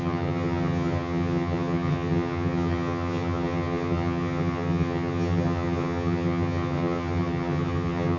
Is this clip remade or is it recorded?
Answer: remade